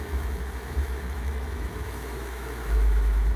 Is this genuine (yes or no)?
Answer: no